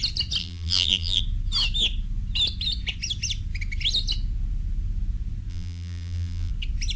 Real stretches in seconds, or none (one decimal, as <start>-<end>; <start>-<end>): 0.0-0.4; 1.2-5.5; 6.5-7.0